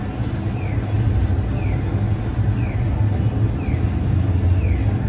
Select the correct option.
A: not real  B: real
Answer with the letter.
B